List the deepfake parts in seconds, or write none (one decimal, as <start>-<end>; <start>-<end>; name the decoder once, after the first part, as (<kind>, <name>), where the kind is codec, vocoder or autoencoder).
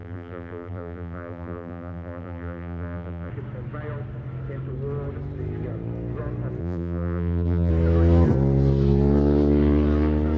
0.0-3.3 (vocoder, BigVGAN v2); 6.6-7.7